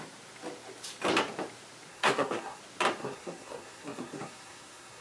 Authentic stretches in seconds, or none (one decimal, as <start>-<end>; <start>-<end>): 0.0-1.9; 2.6-3.0

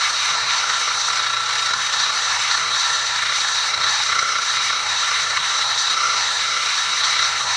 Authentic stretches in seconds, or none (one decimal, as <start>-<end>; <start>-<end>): 1.1-1.7

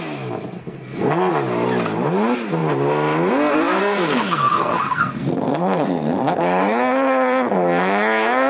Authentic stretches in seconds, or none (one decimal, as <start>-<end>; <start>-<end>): 0.0-0.6; 1.3-3.8

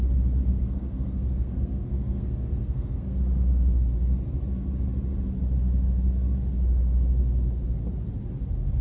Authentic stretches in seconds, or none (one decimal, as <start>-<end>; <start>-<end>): 0.0-0.5; 3.2-8.8

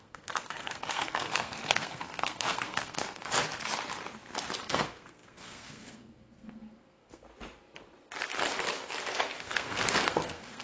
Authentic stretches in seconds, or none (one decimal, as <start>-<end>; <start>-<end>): 3.2-4.7; 7.3-9.4

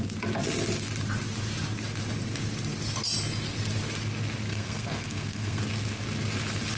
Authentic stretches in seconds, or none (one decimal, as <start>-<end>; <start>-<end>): 0.0-4.5; 5.6-6.8

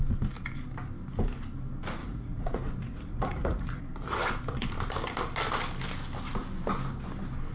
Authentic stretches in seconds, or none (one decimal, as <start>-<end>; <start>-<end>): 0.0-2.0; 3.8-7.5

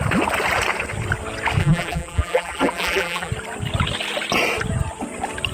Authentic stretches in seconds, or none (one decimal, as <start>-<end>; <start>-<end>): 0.0-1.6; 3.3-5.5